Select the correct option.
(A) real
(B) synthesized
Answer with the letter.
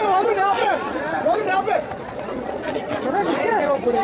B